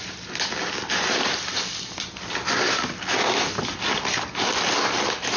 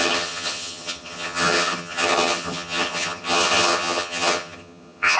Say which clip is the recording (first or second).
first